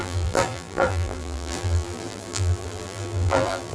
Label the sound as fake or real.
fake